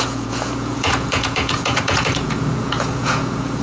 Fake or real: fake